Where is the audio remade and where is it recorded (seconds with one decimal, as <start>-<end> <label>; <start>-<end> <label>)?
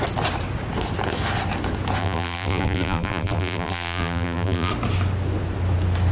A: 0.0-2.0 recorded; 2.0-4.7 remade; 4.7-6.1 recorded